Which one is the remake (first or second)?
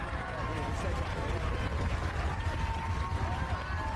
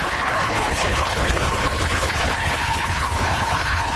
second